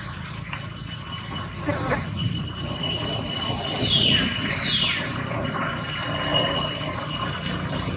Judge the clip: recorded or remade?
recorded